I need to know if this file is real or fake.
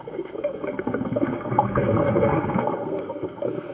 fake